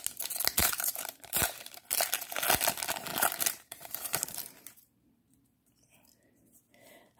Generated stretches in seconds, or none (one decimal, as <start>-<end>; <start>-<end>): 0.6-1.8; 3.1-6.7